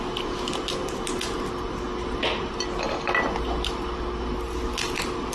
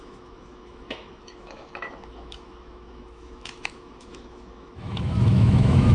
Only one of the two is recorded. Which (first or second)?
first